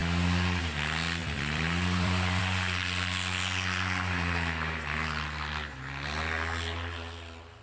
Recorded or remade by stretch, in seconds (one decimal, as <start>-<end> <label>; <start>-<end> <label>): 0.0-1.2 recorded; 1.2-2.4 remade; 2.4-7.6 recorded